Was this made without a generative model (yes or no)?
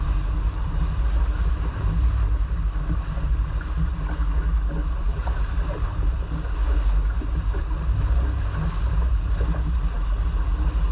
yes